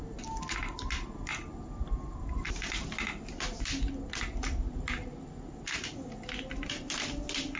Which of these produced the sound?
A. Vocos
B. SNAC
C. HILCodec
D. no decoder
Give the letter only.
D